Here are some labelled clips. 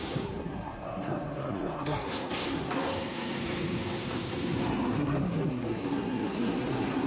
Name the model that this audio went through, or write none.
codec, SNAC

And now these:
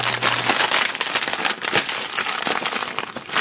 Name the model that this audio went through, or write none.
none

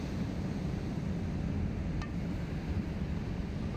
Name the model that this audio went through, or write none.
none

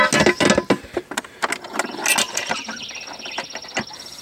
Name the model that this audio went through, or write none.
none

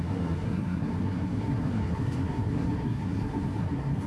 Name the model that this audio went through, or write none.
codec, SNAC